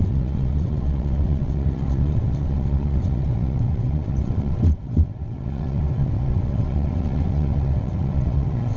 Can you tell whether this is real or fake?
fake